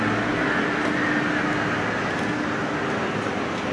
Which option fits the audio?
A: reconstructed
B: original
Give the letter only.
B